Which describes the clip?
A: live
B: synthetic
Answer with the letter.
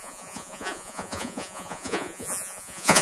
B